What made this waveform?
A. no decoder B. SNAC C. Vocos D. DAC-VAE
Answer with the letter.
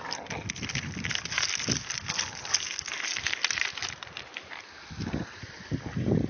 A